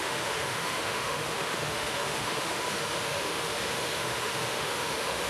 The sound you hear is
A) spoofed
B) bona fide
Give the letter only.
A